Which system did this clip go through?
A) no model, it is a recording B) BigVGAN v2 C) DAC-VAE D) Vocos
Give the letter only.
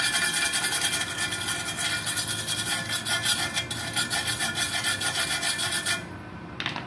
A